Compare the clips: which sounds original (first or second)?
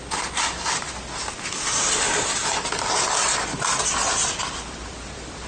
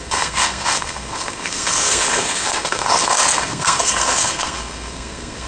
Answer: first